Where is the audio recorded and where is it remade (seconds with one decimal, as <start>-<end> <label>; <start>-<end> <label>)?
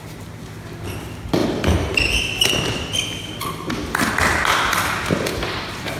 0.0-1.4 recorded; 1.4-4.1 remade; 4.1-6.0 recorded